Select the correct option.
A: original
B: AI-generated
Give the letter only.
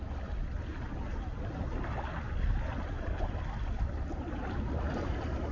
A